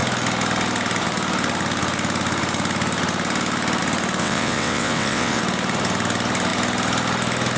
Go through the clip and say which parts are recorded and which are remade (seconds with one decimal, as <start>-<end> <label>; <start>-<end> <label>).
0.0-4.2 recorded; 4.2-5.4 remade; 5.4-7.6 recorded